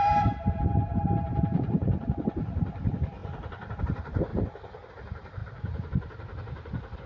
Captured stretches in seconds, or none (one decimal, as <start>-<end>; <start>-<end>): 4.3-4.9